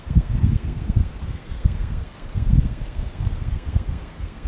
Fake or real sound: fake